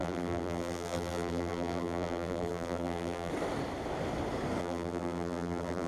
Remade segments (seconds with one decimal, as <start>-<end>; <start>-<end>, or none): 0.0-3.3; 4.6-5.9